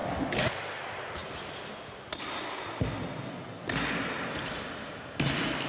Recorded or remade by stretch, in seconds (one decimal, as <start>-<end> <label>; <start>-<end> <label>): 0.0-0.5 remade; 0.5-5.7 recorded